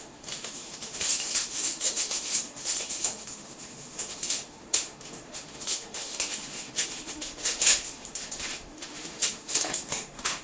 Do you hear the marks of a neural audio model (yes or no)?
yes